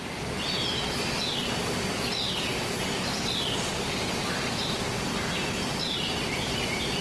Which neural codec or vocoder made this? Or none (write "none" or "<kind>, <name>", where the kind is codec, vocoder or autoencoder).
none